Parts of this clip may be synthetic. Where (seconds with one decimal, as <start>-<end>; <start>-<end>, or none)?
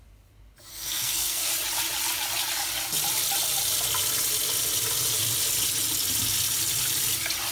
0.7-1.5